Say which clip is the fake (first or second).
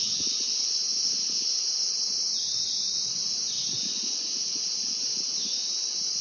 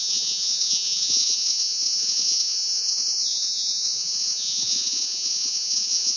second